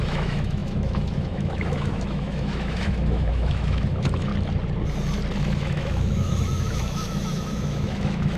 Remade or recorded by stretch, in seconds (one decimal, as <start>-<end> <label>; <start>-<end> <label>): 0.0-4.3 remade; 4.3-5.4 recorded; 5.4-8.4 remade